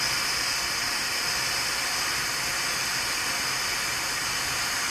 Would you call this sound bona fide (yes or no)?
yes